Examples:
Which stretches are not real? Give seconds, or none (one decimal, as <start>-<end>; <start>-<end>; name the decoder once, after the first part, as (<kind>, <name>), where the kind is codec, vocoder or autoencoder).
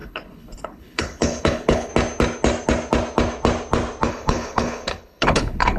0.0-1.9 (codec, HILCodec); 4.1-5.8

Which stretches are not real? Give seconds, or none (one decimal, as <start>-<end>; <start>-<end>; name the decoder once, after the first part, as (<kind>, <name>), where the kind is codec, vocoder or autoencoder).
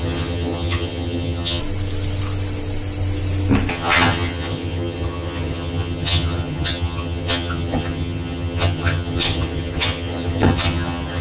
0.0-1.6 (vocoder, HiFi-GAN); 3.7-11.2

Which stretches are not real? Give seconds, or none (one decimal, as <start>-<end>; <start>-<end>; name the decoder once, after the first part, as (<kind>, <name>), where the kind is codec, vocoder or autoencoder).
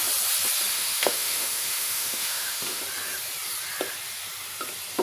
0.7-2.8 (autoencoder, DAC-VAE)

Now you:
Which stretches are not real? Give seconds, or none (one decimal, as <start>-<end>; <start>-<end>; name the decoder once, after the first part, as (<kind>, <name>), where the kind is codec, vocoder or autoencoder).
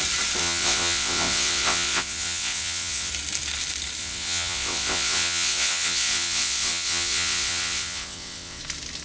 0.4-3.1 (vocoder, WaveNeXt); 4.0-8.6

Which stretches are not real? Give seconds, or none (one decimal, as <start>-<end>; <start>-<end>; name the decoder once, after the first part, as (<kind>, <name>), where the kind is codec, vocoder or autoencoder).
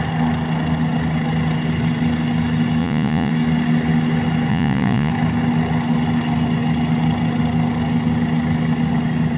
2.8-3.3 (vocoder, Vocos); 4.5-5.1